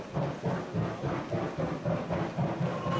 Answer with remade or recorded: recorded